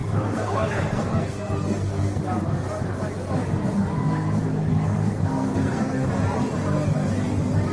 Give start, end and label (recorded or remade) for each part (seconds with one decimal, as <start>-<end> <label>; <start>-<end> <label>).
0.0-2.2 remade; 2.2-4.7 recorded; 4.7-6.1 remade; 6.1-7.7 recorded